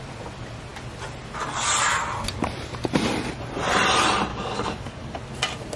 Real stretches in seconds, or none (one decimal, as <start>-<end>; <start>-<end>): 0.0-4.3; 5.2-5.8